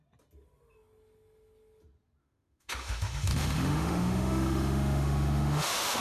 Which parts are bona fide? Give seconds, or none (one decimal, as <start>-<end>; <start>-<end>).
0.0-2.2